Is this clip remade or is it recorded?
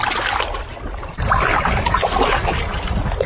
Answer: recorded